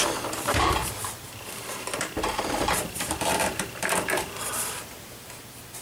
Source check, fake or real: fake